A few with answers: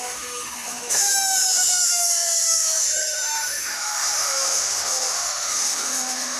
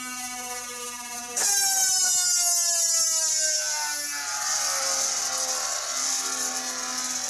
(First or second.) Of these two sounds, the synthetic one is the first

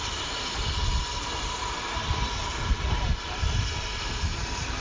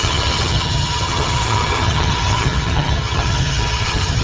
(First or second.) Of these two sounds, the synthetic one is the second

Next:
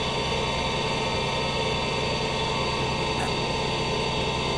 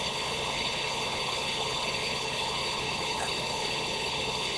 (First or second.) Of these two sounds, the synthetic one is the second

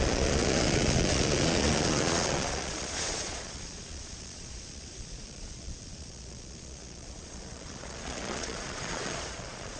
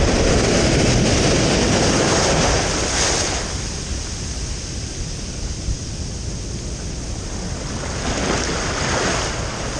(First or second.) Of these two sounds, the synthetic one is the first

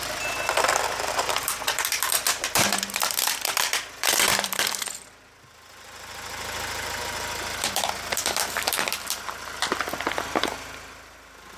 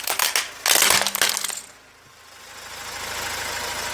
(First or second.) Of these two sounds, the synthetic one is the first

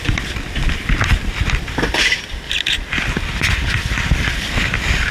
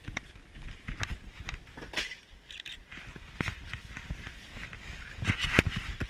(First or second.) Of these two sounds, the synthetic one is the first